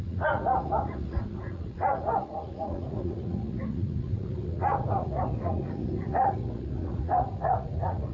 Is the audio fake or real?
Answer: fake